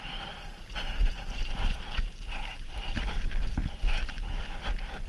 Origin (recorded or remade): remade